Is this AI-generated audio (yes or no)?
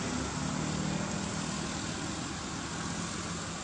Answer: no